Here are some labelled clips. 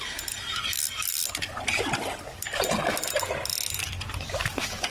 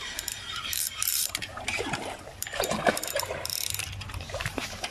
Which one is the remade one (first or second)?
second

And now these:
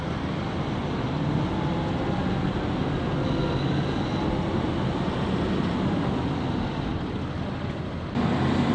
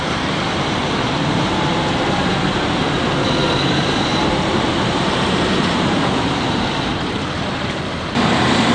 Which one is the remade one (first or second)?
second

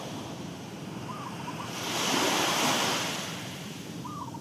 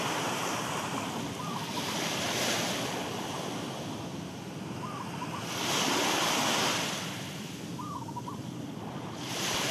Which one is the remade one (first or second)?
first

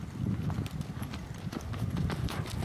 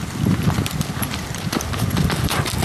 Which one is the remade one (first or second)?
second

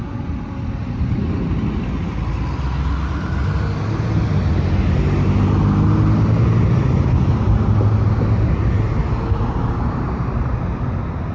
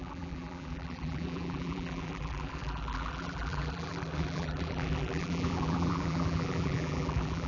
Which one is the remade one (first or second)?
second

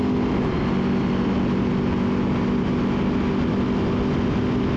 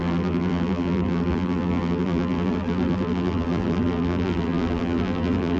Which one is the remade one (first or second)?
second